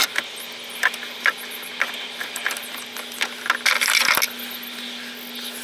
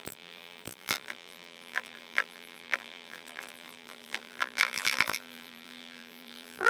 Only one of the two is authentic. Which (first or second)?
first